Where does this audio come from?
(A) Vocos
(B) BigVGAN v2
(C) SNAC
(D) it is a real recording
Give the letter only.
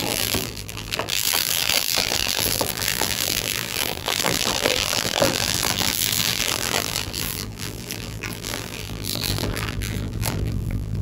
B